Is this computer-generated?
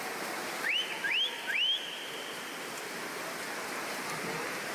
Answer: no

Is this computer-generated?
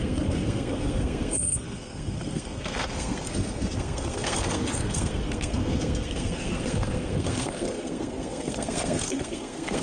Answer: yes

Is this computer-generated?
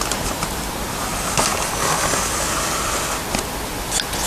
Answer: no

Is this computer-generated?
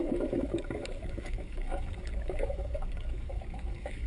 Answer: yes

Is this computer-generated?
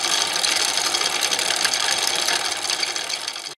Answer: no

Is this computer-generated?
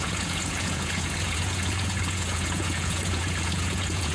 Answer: yes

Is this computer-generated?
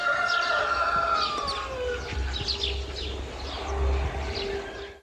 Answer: no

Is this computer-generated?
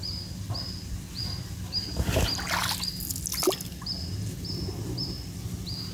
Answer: no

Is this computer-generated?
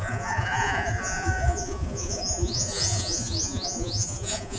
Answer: yes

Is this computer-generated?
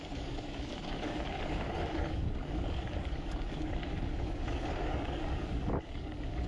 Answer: yes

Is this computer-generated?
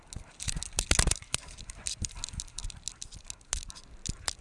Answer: no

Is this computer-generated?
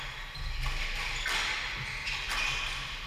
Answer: no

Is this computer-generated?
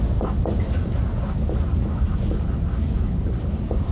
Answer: no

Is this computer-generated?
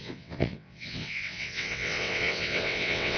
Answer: yes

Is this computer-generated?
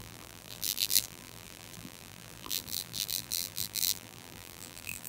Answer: yes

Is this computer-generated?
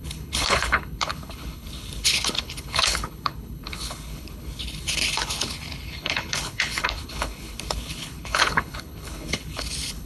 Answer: yes